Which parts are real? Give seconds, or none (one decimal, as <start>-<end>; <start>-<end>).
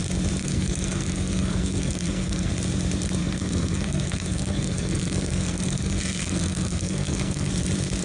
0.0-0.4; 2.5-3.2; 7.5-8.0